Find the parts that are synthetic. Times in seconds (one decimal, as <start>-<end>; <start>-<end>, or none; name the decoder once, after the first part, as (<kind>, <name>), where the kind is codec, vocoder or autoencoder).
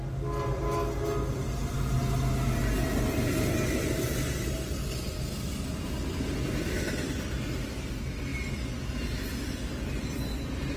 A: 2.6-3.3 (vocoder, BigVGAN v2)